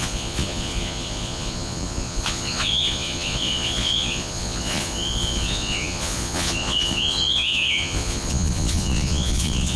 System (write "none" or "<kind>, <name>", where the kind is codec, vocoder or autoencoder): vocoder, Vocos